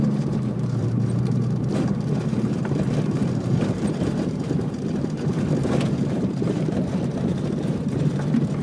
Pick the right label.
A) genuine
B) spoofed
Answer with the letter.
B